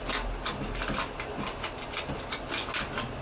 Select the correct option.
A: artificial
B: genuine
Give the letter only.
B